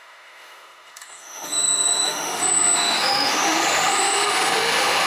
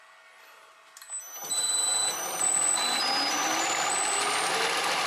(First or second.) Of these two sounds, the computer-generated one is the first